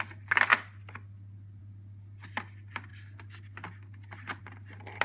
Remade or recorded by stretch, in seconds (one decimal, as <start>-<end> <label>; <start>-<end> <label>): 0.0-5.0 recorded